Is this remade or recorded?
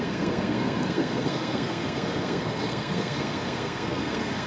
remade